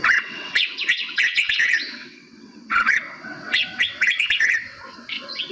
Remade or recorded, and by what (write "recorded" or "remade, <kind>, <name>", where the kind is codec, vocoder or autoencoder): remade, vocoder, WaveNeXt